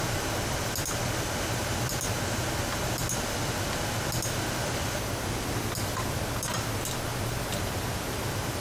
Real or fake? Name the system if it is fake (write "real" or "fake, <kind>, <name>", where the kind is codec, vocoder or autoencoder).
real